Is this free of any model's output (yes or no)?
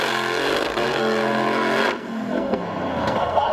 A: no